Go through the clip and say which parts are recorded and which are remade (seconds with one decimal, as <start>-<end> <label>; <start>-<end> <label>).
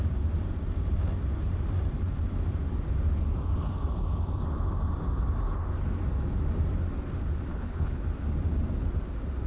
0.0-7.5 recorded; 7.5-8.0 remade; 8.0-9.5 recorded